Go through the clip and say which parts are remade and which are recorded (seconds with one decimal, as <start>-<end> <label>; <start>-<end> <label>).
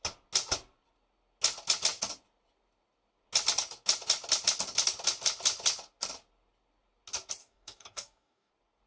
0.0-7.4 recorded; 7.4-8.5 remade; 8.5-8.9 recorded